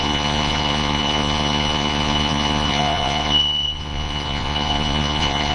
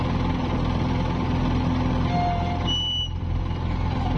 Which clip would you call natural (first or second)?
second